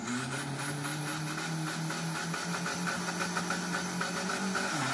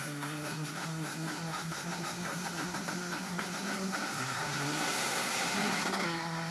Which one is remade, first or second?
second